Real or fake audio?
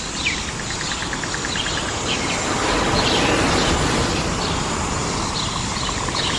real